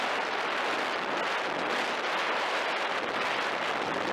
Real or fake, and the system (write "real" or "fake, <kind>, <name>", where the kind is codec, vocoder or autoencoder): real